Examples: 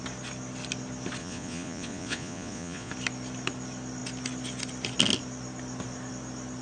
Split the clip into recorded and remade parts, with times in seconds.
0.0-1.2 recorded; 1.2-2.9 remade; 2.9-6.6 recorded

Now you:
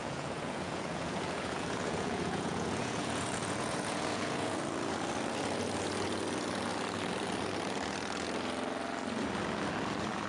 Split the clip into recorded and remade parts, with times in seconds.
0.0-4.6 remade; 4.6-10.3 recorded

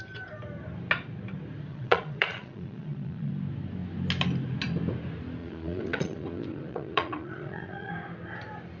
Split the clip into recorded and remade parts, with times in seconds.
0.0-1.7 recorded; 1.7-3.3 remade; 3.3-5.4 recorded; 5.4-7.9 remade; 7.9-8.8 recorded